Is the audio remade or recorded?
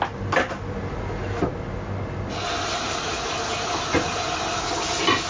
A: recorded